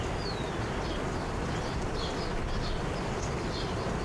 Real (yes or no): yes